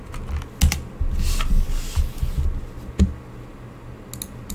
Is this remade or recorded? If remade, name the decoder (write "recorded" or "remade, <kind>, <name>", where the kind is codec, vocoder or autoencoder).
recorded